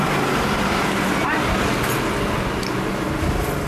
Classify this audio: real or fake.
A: real